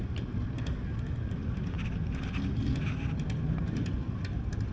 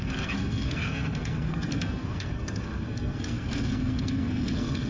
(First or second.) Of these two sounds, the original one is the first